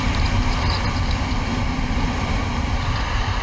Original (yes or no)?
yes